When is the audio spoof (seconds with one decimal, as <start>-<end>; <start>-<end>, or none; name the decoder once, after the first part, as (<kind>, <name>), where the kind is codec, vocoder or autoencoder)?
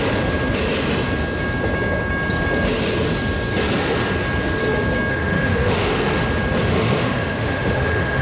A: 5.1-5.9 (autoencoder, DAC-VAE); 6.7-8.2